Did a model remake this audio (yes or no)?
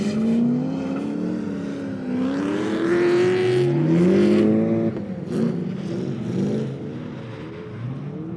no